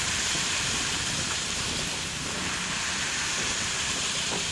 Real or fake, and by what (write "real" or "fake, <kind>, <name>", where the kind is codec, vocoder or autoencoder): fake, vocoder, BigVGAN v2